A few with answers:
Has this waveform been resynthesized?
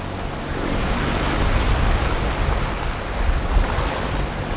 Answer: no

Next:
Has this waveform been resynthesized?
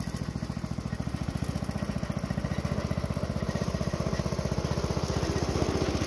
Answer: no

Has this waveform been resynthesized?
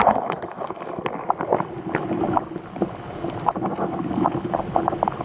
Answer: no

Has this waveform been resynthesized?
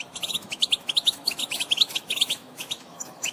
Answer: yes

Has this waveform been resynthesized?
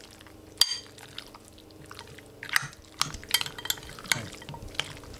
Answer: no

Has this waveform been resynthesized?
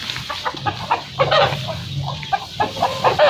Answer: no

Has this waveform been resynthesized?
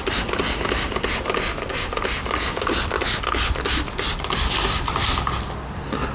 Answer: no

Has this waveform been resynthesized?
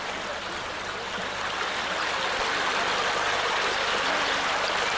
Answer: no